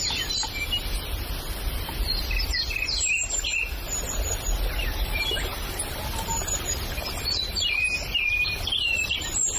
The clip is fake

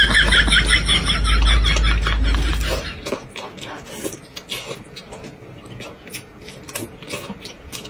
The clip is real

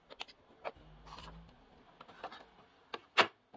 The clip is real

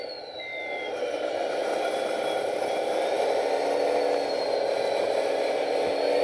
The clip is real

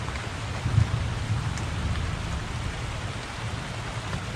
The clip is real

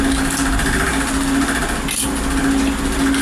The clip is real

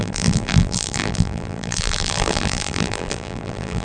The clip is fake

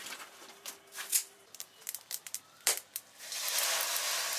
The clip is fake